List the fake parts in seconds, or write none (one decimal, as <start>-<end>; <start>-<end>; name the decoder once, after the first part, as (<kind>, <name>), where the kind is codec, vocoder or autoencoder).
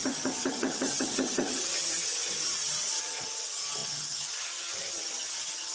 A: 0.0-5.7 (vocoder, HiFi-GAN)